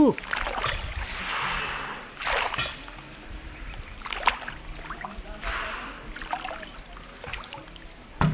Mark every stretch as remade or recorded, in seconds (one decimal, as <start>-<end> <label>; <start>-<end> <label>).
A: 0.0-8.3 recorded

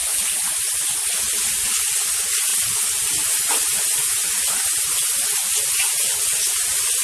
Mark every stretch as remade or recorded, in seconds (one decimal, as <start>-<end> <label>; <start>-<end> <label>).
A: 0.0-1.2 remade; 1.2-4.2 recorded; 4.2-5.0 remade; 5.0-7.0 recorded